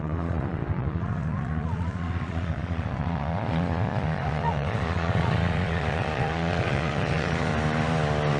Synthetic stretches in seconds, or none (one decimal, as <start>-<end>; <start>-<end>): 0.0-7.5